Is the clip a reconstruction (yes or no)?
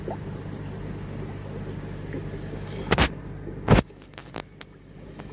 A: no